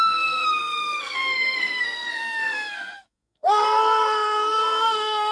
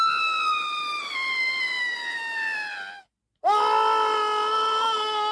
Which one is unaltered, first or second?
second